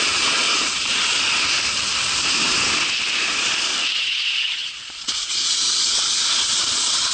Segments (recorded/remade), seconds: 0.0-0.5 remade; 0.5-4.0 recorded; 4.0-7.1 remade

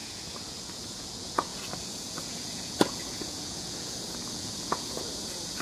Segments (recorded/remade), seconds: 0.0-5.6 remade